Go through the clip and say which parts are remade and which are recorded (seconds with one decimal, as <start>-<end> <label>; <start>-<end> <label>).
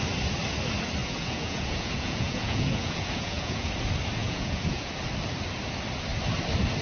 0.0-1.0 recorded; 1.0-3.7 remade; 3.7-4.2 recorded; 4.2-4.9 remade; 4.9-6.8 recorded